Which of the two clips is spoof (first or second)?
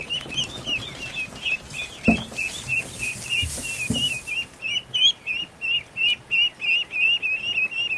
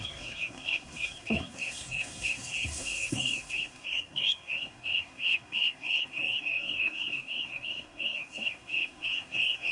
second